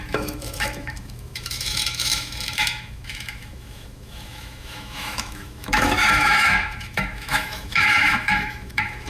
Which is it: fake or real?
fake